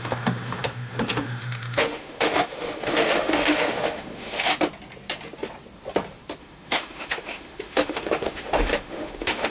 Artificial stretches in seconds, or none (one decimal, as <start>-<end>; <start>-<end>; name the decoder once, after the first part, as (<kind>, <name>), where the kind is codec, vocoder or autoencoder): 0.0-4.5 (autoencoder, DAC-VAE); 6.4-9.5

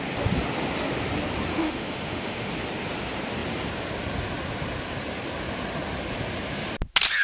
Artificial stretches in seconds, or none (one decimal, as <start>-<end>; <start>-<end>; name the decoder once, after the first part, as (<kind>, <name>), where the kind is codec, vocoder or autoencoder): 1.5-2.5 (autoencoder, DAC-VAE)

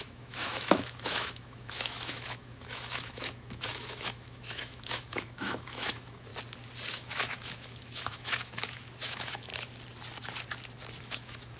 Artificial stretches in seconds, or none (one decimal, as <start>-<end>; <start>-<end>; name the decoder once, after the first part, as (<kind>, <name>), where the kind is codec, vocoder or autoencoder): 0.0-6.3 (autoencoder, DAC-VAE); 6.9-9.5; 11.0-11.6

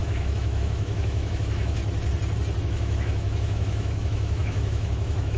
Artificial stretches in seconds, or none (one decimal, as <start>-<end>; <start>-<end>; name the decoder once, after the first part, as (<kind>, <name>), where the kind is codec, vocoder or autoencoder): 0.0-1.8 (autoencoder, DAC-VAE); 2.6-5.4

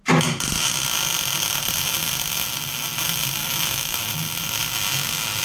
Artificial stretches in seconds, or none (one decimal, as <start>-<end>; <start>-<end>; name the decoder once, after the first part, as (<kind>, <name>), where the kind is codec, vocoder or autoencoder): 3.4-4.0 (autoencoder, DAC-VAE)